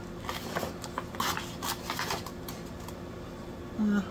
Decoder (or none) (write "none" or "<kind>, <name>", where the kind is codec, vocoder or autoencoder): none